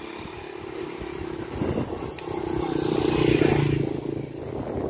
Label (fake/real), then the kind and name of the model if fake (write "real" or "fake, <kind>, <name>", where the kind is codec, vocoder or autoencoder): real